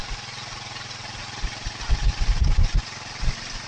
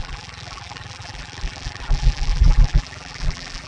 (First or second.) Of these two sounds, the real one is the first